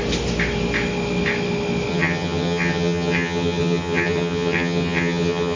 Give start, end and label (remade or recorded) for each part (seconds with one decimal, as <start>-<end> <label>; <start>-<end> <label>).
0.0-1.9 recorded; 1.9-5.6 remade